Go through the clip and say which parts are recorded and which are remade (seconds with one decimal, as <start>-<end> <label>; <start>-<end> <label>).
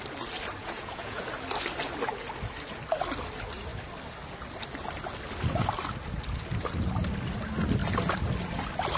0.0-0.6 recorded; 0.6-1.2 remade; 1.2-9.0 recorded